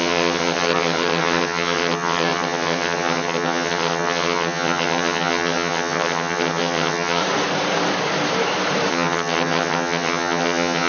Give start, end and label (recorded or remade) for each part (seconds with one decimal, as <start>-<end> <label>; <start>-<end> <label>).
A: 0.0-7.2 remade; 7.2-8.9 recorded; 8.9-10.9 remade